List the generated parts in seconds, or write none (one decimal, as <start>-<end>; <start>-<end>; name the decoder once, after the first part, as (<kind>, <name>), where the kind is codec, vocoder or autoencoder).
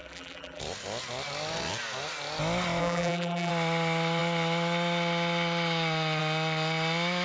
0.0-0.6 (vocoder, BigVGAN v2); 2.8-3.5